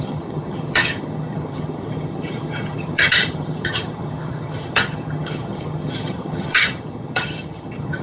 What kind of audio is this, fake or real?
fake